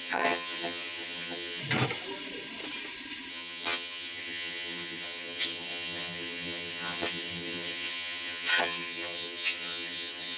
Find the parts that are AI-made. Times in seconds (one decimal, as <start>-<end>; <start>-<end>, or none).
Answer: 0.0-1.6; 3.3-10.4

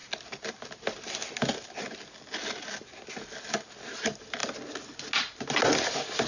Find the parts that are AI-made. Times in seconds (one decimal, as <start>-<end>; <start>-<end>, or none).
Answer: none

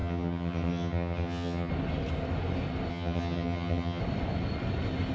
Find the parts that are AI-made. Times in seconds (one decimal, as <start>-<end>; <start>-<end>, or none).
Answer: 0.0-1.7; 2.9-4.0

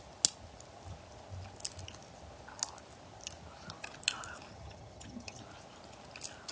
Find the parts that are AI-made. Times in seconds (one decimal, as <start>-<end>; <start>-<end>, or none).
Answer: 4.5-5.4

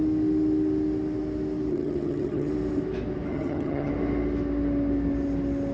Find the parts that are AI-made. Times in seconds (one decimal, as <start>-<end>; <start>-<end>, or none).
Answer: 1.7-2.5; 3.3-3.9